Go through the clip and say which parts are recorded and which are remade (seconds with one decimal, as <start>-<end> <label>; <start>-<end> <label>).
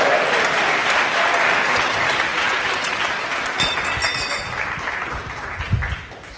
0.0-6.4 recorded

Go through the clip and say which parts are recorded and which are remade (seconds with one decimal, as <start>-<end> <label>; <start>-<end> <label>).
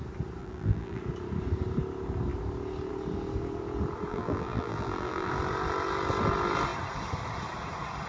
0.0-0.4 recorded; 0.4-1.0 remade; 1.0-4.1 recorded; 4.1-5.3 remade; 5.3-8.1 recorded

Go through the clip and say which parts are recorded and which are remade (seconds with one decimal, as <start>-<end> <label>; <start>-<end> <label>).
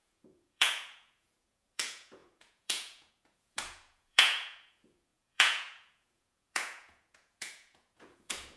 0.0-8.6 remade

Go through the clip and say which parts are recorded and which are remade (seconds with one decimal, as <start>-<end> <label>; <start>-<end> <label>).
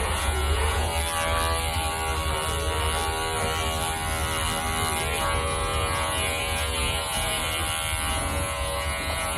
0.0-0.9 remade; 0.9-5.2 recorded; 5.2-7.4 remade; 7.4-8.1 recorded; 8.1-9.4 remade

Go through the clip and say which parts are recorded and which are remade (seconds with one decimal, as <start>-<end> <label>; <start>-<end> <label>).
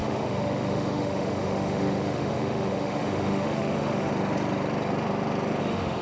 0.0-4.1 remade; 4.1-5.6 recorded; 5.6-6.0 remade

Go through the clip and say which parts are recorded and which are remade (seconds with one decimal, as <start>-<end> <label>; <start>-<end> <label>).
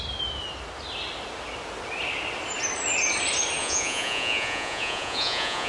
0.0-3.6 recorded; 3.6-5.7 remade